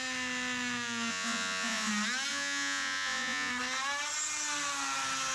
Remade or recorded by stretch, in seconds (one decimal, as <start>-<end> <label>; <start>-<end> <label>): 0.0-1.1 recorded; 1.1-1.9 remade; 1.9-2.3 recorded; 2.3-3.5 remade; 3.5-5.3 recorded